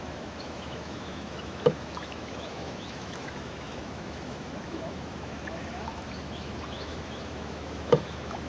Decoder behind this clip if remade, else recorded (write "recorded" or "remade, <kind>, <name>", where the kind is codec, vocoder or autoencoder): remade, autoencoder, DAC-VAE